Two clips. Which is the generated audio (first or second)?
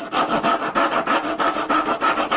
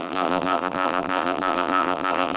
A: second